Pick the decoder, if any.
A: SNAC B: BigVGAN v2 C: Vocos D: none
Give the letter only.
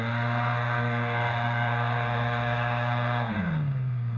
A